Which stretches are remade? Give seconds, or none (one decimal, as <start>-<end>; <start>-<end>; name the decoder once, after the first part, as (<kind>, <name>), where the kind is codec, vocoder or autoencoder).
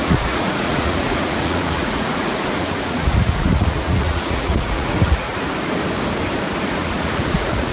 0.0-5.3 (vocoder, Vocos); 6.6-7.7